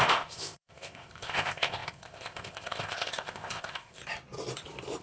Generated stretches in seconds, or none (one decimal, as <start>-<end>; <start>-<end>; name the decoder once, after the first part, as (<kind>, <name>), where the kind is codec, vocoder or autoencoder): 0.0-4.0 (codec, ZipCodec)